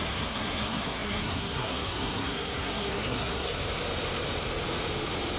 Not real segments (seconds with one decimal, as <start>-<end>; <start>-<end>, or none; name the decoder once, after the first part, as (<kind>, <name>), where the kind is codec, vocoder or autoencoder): 0.0-3.5 (codec, SNAC)